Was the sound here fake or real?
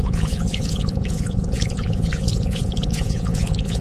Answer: fake